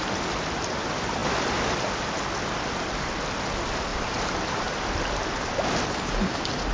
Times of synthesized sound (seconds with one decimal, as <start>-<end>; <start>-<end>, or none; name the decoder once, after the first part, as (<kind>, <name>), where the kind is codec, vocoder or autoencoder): none